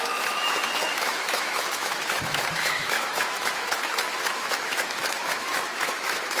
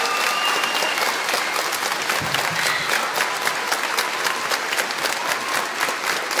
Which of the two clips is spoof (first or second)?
first